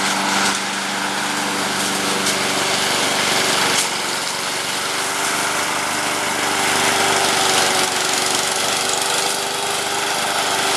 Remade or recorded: recorded